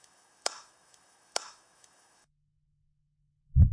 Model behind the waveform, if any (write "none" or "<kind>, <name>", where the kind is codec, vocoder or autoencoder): autoencoder, DAC-VAE